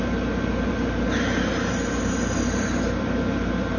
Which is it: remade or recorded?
recorded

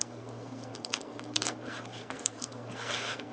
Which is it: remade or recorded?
remade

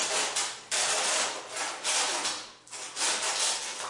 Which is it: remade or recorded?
recorded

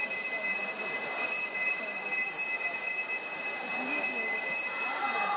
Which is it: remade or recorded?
recorded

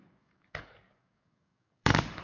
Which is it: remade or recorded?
remade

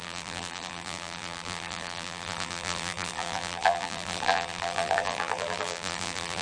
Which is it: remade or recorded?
remade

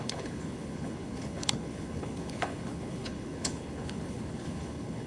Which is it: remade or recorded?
remade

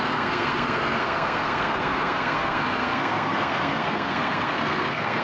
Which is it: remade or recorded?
remade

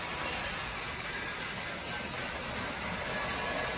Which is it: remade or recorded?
recorded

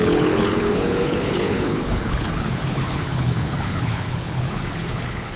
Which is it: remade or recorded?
remade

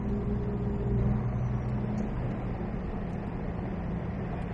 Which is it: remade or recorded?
recorded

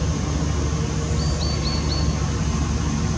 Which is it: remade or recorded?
recorded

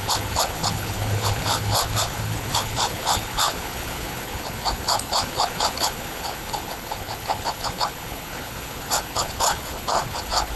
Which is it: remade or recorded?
remade